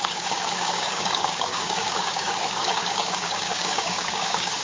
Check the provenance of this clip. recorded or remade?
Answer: remade